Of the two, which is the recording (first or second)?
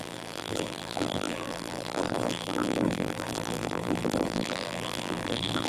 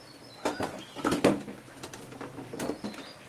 second